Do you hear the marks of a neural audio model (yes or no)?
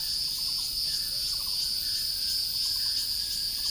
no